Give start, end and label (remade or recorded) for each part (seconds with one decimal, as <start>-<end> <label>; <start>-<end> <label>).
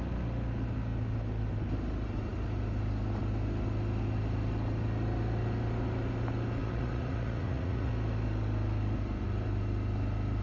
0.0-6.6 recorded; 6.6-7.9 remade; 7.9-10.4 recorded